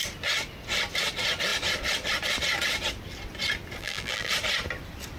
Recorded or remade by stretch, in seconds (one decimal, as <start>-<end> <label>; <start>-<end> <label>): 0.0-3.8 recorded; 3.8-4.3 remade; 4.3-5.2 recorded